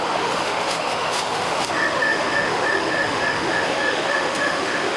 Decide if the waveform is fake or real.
fake